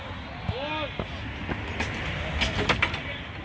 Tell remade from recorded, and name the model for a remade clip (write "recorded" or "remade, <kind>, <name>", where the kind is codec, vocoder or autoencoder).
recorded